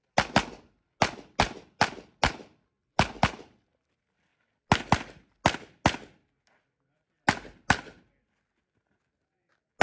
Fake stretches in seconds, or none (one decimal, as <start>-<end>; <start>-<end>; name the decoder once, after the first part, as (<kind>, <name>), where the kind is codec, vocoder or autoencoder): none